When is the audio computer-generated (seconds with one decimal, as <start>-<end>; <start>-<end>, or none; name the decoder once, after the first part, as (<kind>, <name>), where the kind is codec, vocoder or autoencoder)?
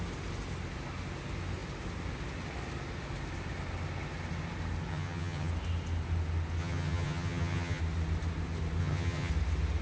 4.9-5.5 (vocoder, HiFi-GAN); 6.6-7.8; 8.8-9.3